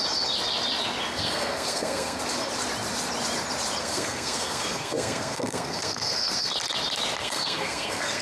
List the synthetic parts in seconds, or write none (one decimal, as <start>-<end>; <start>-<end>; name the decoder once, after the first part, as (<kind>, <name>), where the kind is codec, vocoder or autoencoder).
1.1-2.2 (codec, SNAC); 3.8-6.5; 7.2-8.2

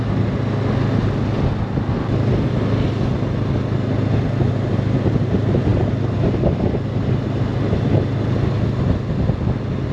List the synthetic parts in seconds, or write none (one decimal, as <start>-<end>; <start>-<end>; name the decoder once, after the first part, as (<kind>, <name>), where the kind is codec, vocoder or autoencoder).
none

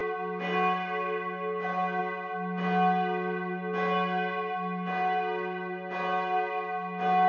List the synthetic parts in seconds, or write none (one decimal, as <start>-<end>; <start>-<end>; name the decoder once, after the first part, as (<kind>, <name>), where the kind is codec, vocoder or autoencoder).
none

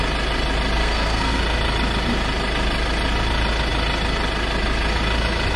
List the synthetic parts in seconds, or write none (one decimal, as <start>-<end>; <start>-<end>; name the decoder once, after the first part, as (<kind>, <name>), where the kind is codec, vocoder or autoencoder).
0.8-1.4 (codec, SNAC)